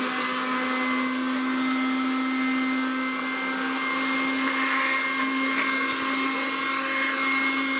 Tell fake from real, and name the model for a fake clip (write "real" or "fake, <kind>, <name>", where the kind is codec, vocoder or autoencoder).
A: real